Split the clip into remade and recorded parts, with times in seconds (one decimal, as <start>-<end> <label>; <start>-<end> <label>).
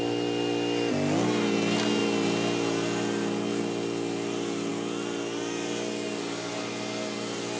0.0-7.6 recorded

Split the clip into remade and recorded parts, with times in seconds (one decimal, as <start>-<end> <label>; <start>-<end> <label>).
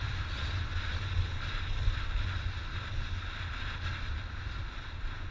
0.0-5.3 recorded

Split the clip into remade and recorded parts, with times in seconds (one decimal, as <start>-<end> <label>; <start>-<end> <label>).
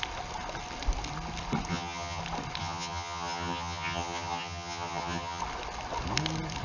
0.0-1.7 recorded; 1.7-2.2 remade; 2.2-2.6 recorded; 2.6-5.4 remade; 5.4-6.6 recorded